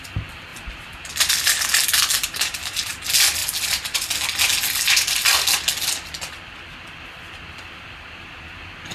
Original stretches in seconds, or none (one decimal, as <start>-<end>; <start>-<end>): 0.0-0.5; 1.1-2.1; 2.9-8.9

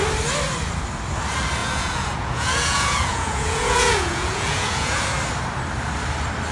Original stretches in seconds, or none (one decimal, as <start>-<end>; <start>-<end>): 0.0-1.6; 5.0-6.5

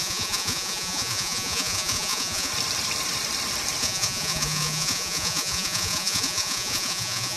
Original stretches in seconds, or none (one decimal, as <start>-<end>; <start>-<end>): 2.5-3.8

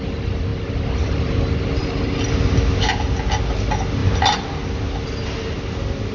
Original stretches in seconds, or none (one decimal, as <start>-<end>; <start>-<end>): 0.0-4.0; 5.2-6.1

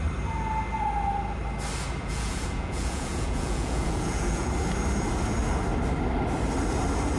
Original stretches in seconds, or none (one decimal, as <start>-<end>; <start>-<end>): 0.0-2.0; 4.5-7.2

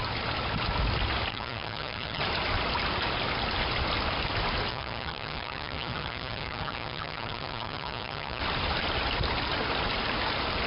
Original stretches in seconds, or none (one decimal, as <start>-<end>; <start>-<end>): 0.0-1.3; 2.2-4.7; 8.4-10.7

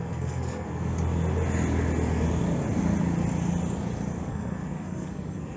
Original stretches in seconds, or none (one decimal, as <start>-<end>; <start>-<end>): 0.9-4.3